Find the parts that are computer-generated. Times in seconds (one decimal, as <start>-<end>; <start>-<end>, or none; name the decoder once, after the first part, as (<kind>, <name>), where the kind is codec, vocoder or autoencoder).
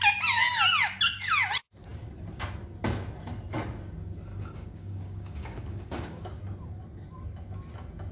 4.3-6.4 (codec, DAC)